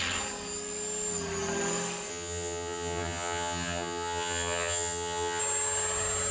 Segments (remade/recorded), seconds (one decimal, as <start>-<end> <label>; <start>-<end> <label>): 0.0-2.1 recorded; 2.1-5.4 remade; 5.4-6.3 recorded